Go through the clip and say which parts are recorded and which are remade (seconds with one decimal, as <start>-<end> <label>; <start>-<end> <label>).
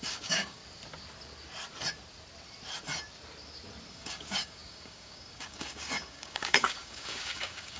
0.0-0.6 remade; 0.6-3.9 recorded; 3.9-7.8 remade